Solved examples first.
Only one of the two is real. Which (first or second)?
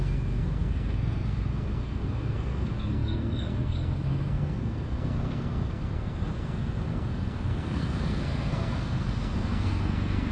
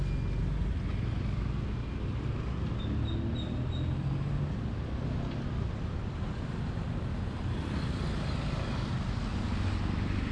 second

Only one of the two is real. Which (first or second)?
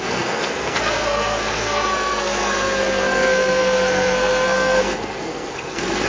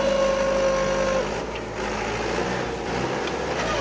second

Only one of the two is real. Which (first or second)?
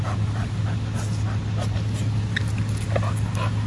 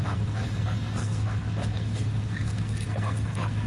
first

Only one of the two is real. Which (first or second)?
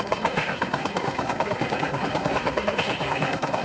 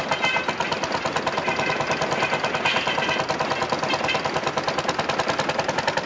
second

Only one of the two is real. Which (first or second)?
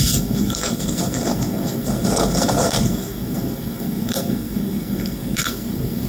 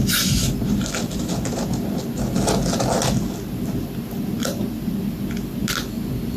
second